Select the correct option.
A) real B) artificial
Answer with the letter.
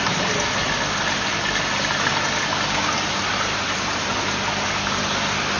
A